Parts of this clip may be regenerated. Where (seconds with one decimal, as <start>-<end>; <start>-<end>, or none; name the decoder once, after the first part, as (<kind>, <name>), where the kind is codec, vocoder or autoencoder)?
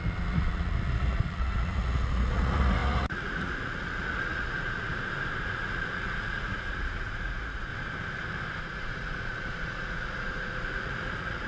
0.0-4.9 (vocoder, Vocos); 5.4-7.7; 8.6-11.5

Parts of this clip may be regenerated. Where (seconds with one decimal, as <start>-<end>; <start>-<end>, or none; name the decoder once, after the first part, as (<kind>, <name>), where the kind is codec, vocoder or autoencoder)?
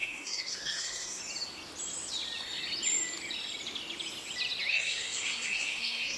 0.0-1.2 (codec, SNAC); 4.7-6.2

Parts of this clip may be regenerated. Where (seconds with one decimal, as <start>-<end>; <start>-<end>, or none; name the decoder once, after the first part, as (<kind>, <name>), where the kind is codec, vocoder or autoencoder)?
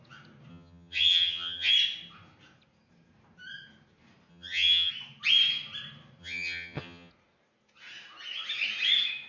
0.5-1.7 (vocoder, HiFi-GAN); 4.3-4.9; 6.2-7.1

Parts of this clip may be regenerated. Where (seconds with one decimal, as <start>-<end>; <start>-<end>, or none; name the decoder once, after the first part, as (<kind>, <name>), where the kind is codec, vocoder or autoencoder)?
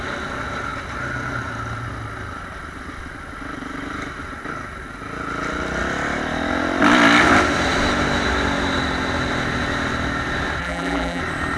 10.6-11.2 (vocoder, BigVGAN v2)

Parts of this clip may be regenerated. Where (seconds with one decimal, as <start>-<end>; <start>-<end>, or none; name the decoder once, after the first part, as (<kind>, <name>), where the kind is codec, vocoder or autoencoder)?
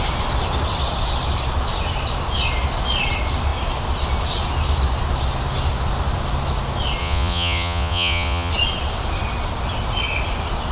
7.0-8.5 (vocoder, Vocos)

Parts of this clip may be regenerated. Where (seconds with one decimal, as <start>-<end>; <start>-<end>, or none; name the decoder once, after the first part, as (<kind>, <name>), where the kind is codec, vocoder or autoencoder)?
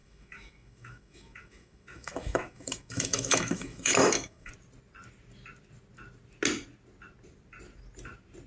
0.0-4.5 (autoencoder, DAC-VAE)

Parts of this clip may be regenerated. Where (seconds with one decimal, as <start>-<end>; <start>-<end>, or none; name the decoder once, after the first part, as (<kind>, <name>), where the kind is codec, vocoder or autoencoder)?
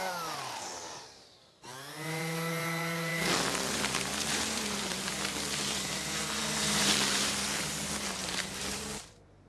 0.0-9.5 (vocoder, BigVGAN v2)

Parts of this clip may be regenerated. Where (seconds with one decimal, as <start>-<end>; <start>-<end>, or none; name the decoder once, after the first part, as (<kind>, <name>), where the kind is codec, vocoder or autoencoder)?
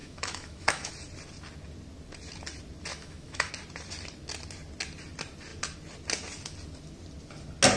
0.0-0.9 (autoencoder, DAC-VAE); 2.9-3.5